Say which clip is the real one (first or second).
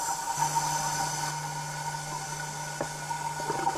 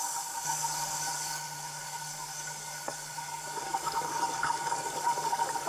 first